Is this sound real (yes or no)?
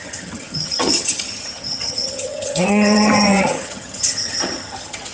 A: no